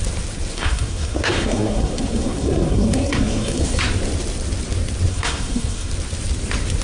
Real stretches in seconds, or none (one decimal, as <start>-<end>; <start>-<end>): 0.0-0.5; 3.8-5.1; 5.9-6.8